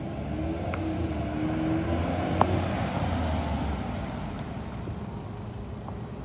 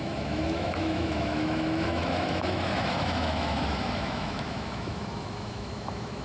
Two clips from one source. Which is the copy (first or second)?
second